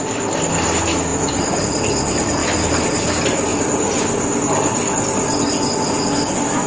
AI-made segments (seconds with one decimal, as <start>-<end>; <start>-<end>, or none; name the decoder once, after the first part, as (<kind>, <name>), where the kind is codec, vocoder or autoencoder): none